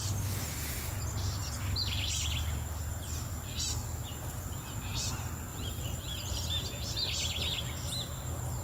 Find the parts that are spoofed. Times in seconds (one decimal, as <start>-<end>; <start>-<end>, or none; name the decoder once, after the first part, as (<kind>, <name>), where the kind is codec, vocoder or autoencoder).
4.1-5.1 (vocoder, BigVGAN v2); 5.5-6.4